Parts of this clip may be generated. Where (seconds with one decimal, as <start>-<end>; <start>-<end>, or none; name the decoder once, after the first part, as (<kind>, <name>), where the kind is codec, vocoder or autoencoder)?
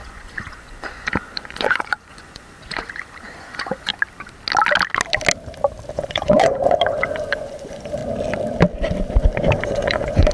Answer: 0.0-3.9 (vocoder, Vocos); 5.9-8.0; 9.6-10.3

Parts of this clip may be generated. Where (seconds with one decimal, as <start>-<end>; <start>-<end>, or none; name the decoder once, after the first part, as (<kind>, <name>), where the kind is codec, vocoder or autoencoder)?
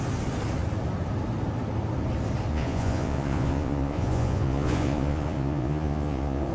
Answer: 2.5-6.5 (vocoder, Vocos)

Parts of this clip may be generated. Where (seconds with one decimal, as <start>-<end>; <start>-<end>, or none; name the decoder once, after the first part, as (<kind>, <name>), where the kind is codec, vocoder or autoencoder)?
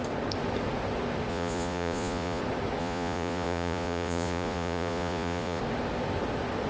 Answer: 1.3-2.4 (vocoder, Vocos); 2.8-5.6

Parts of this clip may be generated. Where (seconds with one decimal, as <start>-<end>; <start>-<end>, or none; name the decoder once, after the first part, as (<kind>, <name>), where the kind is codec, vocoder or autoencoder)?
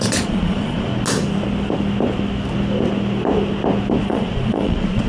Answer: 0.0-0.9 (vocoder, Vocos); 4.0-5.1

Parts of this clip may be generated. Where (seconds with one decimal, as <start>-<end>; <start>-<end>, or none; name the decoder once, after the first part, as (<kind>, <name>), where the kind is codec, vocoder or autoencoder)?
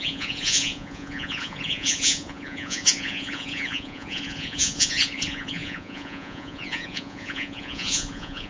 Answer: 0.0-8.5 (vocoder, Vocos)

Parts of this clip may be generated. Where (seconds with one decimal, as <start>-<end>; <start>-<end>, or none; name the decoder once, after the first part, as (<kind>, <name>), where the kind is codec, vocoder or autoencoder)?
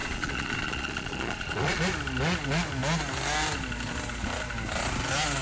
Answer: 0.0-1.8 (vocoder, Vocos)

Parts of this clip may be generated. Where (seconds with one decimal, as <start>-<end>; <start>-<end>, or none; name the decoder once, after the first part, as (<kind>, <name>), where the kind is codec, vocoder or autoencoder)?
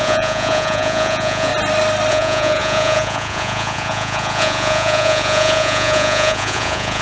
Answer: 0.0-1.5 (vocoder, Vocos); 2.1-7.0